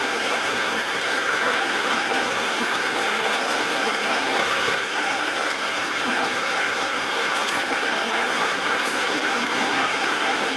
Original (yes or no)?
no